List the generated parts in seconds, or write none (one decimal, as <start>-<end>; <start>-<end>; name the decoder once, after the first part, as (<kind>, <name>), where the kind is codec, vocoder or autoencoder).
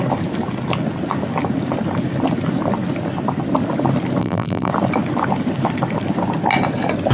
4.2-4.7 (vocoder, BigVGAN v2)